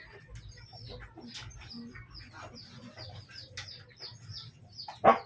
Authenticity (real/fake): real